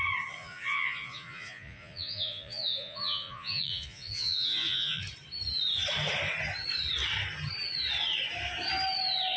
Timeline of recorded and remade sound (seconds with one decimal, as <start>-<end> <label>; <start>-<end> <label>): 0.0-0.4 recorded; 0.4-5.0 remade; 5.0-9.4 recorded